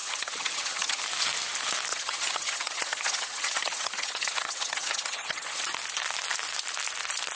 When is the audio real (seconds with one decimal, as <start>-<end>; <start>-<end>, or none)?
1.0-1.9; 5.6-7.4